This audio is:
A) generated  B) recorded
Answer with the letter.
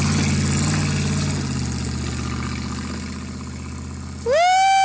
B